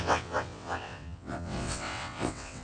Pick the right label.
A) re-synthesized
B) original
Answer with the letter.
A